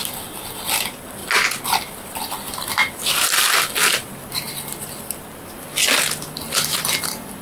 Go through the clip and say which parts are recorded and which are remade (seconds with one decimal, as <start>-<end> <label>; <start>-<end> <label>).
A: 0.0-7.4 recorded